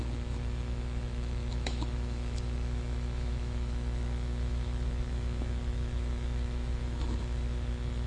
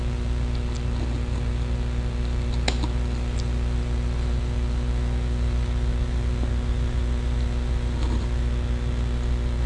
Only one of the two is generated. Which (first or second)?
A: first